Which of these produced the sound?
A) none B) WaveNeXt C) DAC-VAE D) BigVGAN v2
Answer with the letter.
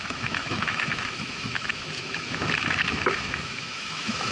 C